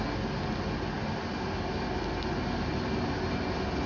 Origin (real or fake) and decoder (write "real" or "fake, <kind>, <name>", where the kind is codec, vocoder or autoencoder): real